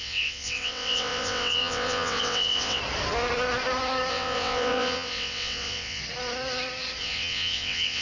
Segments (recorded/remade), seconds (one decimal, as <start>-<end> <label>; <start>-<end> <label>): 0.0-2.8 remade; 2.8-4.1 recorded; 4.1-6.0 remade; 6.0-7.0 recorded; 7.0-8.0 remade